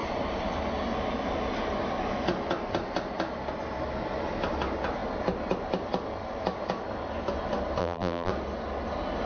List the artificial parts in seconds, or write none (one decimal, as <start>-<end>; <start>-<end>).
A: 7.8-8.3